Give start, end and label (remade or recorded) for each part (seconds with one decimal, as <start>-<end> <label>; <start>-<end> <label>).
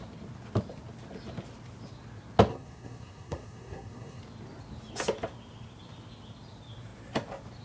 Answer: 0.0-2.5 recorded; 2.5-4.2 remade; 4.2-7.6 recorded